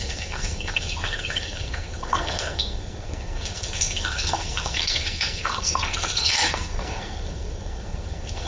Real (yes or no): no